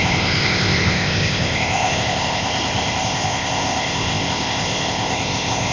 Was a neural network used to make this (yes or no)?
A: yes